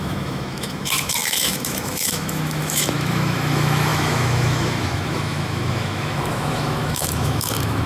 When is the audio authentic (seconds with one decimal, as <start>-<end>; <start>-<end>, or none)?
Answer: none